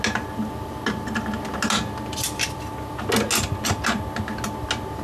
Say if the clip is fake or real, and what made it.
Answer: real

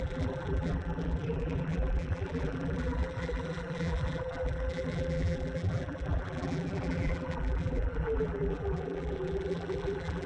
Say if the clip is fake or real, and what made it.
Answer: fake, vocoder, BigVGAN v2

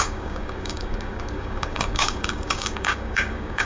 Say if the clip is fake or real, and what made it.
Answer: fake, codec, DAC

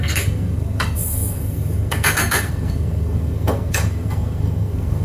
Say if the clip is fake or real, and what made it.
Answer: fake, codec, SNAC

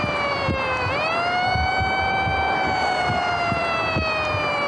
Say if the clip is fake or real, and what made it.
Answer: fake, vocoder, BigVGAN v2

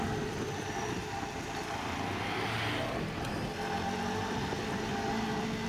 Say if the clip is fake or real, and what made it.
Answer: real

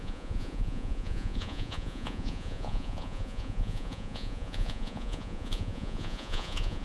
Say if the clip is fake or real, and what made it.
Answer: fake, vocoder, Vocos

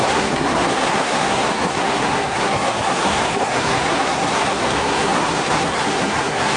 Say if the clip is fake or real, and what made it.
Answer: fake, codec, SNAC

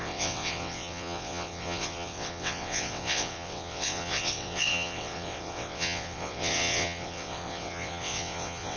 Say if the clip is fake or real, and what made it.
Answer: fake, vocoder, WaveNeXt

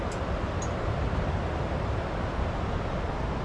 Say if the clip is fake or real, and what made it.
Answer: real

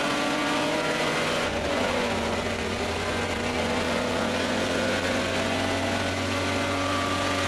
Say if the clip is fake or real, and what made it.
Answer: fake, vocoder, Vocos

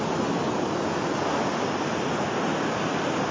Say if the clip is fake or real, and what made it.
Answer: real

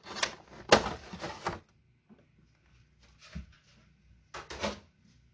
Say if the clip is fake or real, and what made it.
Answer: real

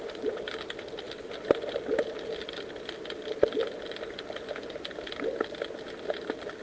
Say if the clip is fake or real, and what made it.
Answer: real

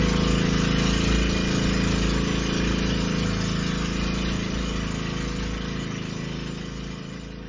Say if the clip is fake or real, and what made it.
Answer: real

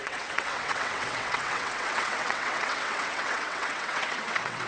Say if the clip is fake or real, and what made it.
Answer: fake, vocoder, WaveNeXt